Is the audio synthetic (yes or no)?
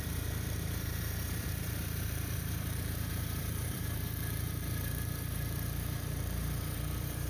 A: yes